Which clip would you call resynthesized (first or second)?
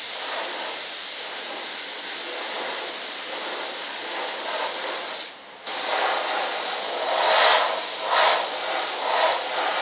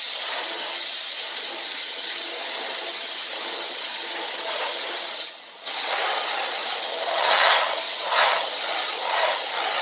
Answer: second